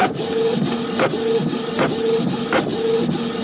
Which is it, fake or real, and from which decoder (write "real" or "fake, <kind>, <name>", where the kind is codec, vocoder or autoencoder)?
real